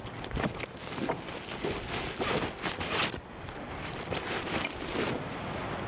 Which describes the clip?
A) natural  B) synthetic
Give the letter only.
A